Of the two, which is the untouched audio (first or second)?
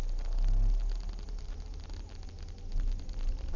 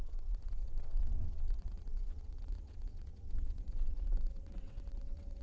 first